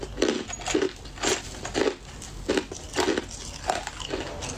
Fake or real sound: real